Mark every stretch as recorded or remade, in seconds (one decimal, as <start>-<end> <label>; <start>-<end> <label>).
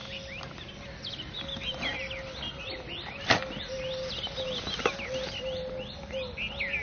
0.0-6.8 recorded